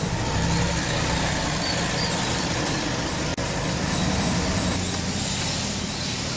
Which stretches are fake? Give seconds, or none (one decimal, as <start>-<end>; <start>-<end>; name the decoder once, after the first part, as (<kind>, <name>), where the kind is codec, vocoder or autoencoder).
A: 0.0-3.3 (vocoder, BigVGAN v2); 3.9-6.4